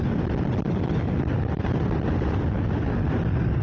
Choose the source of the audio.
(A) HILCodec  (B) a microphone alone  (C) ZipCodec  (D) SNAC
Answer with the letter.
B